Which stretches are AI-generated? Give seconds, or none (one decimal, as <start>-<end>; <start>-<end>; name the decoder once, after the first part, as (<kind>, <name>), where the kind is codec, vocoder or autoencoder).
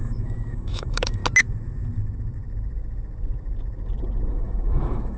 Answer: 0.0-1.2 (autoencoder, DAC-VAE); 4.3-5.2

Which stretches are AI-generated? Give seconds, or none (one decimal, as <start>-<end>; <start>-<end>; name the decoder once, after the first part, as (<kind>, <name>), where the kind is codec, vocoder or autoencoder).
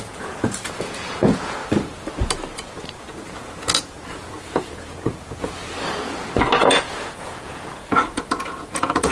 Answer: 0.0-1.6 (vocoder, Vocos); 3.0-5.6; 6.6-9.1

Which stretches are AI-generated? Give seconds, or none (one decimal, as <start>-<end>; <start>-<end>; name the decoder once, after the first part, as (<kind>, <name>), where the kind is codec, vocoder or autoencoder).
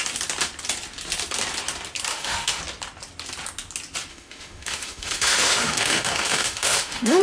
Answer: 2.1-2.6 (autoencoder, DAC-VAE); 4.1-7.2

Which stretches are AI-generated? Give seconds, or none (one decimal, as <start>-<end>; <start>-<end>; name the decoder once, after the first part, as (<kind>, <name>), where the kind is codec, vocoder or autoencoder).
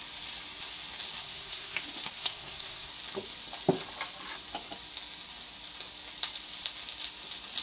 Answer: 1.2-1.8 (codec, SNAC); 2.2-2.9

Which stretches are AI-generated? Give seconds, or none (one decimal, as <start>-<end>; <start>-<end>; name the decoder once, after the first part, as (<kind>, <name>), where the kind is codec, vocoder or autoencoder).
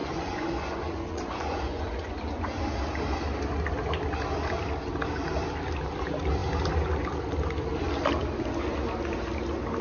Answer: 0.0-2.6 (vocoder, Vocos)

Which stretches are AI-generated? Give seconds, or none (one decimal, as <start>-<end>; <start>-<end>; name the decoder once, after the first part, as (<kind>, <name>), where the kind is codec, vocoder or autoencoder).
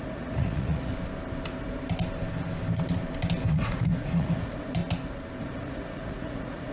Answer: 0.0-0.9 (vocoder, Vocos); 3.5-4.8; 5.4-6.7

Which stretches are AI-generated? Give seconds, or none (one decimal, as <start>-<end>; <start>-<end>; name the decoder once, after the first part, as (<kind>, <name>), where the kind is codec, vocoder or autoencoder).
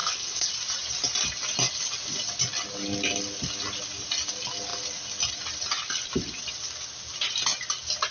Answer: 0.0-0.5 (codec, HILCodec)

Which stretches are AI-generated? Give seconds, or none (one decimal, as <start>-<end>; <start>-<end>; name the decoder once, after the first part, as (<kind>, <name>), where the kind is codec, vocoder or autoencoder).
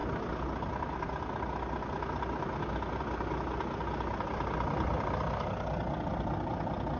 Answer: none